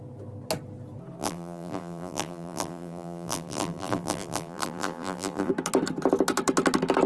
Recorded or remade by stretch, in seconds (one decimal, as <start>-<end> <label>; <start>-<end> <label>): 0.0-1.2 recorded; 1.2-5.5 remade; 5.5-7.1 recorded